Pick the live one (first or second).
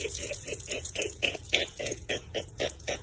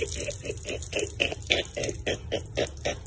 second